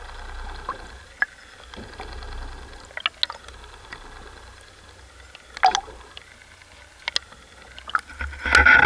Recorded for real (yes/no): yes